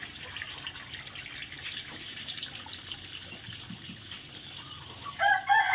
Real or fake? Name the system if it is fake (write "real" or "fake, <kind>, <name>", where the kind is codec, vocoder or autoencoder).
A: real